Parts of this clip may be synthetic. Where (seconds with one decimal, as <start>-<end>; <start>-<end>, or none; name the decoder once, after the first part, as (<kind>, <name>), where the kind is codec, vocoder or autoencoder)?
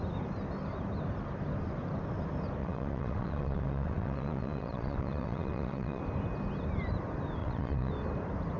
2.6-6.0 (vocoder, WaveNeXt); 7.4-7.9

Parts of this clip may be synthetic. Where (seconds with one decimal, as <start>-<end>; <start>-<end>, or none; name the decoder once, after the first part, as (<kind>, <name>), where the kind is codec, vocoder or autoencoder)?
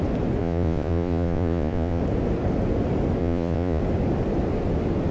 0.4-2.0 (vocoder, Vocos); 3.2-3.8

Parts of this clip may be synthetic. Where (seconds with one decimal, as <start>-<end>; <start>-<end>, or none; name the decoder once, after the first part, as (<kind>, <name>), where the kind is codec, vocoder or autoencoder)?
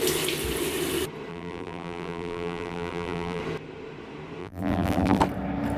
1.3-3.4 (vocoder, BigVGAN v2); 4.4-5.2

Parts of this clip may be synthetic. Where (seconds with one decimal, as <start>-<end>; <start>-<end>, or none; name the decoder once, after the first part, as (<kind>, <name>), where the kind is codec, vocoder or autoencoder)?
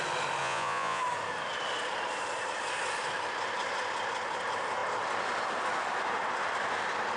0.4-1.0 (vocoder, Vocos)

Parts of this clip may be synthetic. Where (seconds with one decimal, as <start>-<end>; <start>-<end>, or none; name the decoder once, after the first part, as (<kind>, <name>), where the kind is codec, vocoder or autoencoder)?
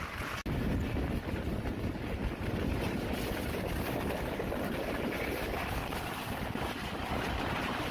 5.8-7.4 (vocoder, BigVGAN v2)